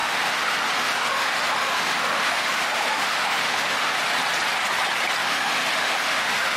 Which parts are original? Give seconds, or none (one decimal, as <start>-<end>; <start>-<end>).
4.0-5.2